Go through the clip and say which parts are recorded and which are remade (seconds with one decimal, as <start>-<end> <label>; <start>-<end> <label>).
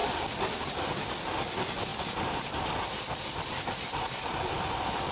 0.0-1.9 recorded; 1.9-4.4 remade; 4.4-5.1 recorded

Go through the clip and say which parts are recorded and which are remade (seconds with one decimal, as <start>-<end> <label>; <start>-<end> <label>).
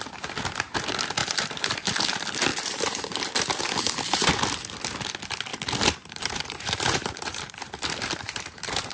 0.0-1.2 recorded; 1.2-1.9 remade; 1.9-2.5 recorded; 2.5-4.3 remade; 4.3-5.5 recorded; 5.5-8.9 remade